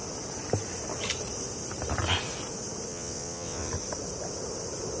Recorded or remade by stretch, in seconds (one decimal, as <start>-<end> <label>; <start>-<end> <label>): 0.0-2.9 recorded; 2.9-3.7 remade; 3.7-5.0 recorded

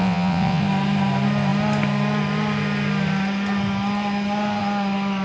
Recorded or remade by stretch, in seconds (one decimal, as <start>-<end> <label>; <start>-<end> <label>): 0.0-0.6 remade; 0.6-5.2 recorded